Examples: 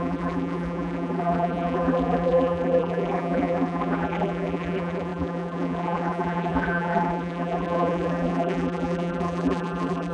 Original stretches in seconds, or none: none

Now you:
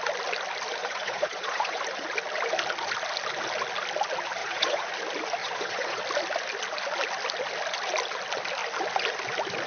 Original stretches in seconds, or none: 0.0-0.8; 1.8-4.4; 4.9-5.4; 6.0-9.7

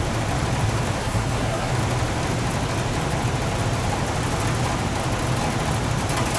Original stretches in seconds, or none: 0.0-1.0; 1.7-6.4

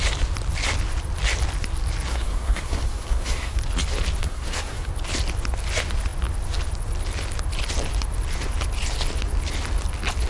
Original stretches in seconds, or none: 0.0-2.1; 3.6-4.2; 4.9-10.3

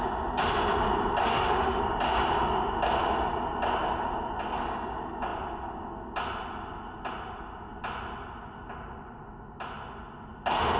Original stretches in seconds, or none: 0.0-1.2; 1.8-10.8

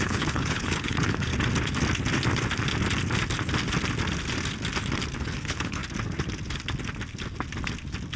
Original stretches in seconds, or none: 1.3-5.2; 5.8-8.2

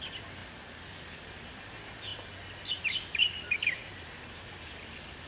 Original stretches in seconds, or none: 0.0-5.3

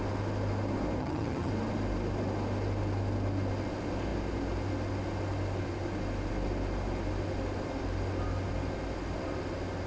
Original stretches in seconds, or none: 0.0-1.0; 1.5-9.9